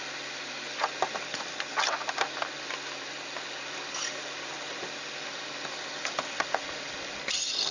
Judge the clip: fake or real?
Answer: real